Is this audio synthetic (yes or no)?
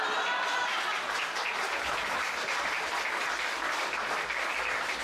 no